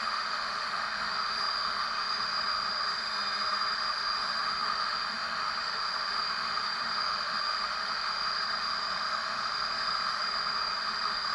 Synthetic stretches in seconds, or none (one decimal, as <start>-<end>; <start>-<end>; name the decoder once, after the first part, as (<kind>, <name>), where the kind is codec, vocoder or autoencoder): 0.0-3.1 (autoencoder, DAC-VAE); 3.7-11.3